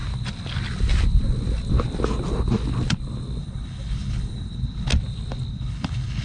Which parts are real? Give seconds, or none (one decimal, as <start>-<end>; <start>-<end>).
0.0-3.4; 4.9-5.5